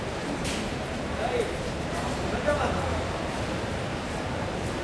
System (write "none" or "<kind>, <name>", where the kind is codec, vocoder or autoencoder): vocoder, BigVGAN v2